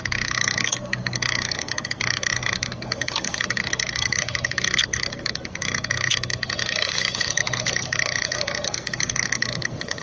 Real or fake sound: fake